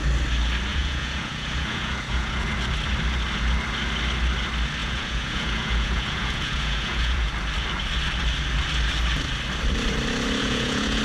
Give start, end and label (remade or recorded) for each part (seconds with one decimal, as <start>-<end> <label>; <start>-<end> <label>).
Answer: 0.0-0.7 recorded; 0.7-2.5 remade; 2.5-4.8 recorded; 4.8-7.3 remade; 7.3-10.4 recorded; 10.4-11.0 remade